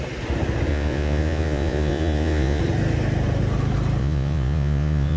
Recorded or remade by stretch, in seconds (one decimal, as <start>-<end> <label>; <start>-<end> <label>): 0.0-0.7 recorded; 0.7-2.6 remade; 2.6-4.0 recorded; 4.0-5.2 remade